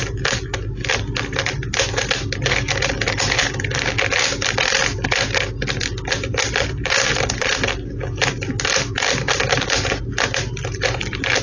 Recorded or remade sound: recorded